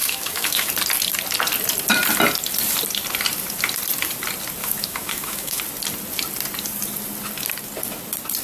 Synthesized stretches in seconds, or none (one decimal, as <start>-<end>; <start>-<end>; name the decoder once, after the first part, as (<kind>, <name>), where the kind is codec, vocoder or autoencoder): 0.0-0.7 (autoencoder, DAC-VAE); 4.6-5.6